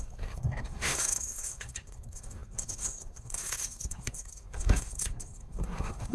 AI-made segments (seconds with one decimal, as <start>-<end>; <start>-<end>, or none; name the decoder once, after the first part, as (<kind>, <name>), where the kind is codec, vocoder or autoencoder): 0.0-6.1 (codec, SNAC)